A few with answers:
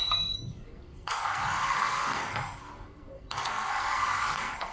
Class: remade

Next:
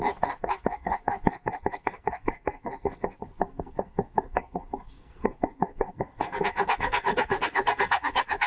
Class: remade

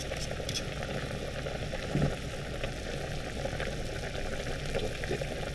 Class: recorded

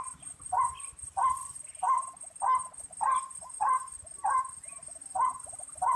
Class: recorded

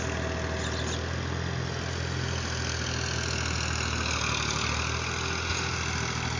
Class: recorded